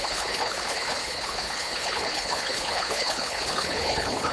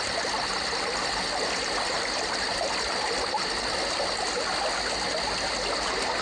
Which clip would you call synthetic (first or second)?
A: first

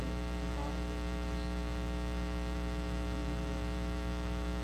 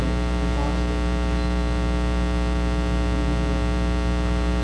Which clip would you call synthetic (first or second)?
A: first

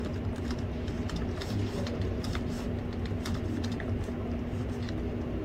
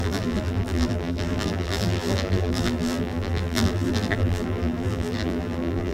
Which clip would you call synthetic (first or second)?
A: second